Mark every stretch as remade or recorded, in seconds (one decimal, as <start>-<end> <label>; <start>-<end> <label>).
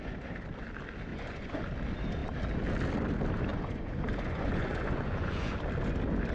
0.0-1.1 recorded; 1.1-1.6 remade; 1.6-3.5 recorded; 3.5-5.6 remade; 5.6-6.3 recorded